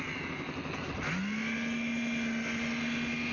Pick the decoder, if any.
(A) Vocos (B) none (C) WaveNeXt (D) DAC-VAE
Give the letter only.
B